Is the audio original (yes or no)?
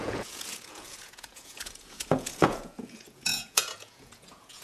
no